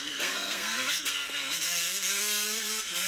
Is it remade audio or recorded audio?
remade